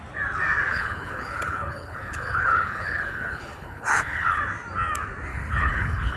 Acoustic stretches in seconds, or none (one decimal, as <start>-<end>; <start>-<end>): 0.0-0.7; 4.4-5.3